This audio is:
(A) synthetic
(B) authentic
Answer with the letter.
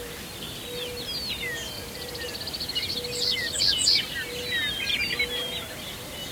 B